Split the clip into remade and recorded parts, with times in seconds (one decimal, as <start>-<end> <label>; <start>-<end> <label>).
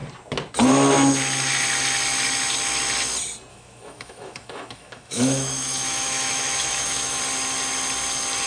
0.0-3.5 recorded; 3.5-7.2 remade; 7.2-8.5 recorded